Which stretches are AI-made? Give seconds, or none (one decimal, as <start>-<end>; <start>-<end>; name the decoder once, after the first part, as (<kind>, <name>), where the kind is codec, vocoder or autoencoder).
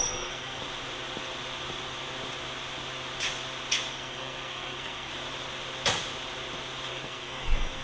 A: 0.0-0.6 (codec, SNAC); 3.9-5.1; 6.9-7.8